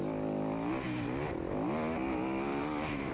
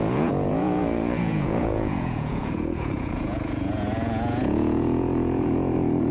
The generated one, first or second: second